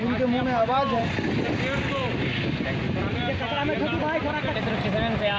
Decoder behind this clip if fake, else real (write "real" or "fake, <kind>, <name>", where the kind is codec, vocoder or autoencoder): real